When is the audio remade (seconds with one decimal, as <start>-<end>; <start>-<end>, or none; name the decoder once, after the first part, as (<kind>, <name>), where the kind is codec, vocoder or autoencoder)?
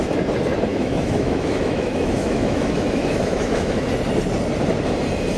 0.7-3.9 (autoencoder, DAC-VAE)